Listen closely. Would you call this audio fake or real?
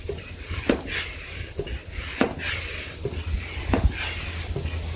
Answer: real